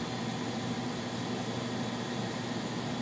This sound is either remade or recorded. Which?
recorded